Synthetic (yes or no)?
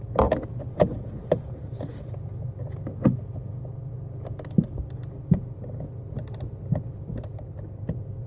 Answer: no